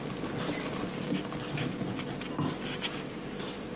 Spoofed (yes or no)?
no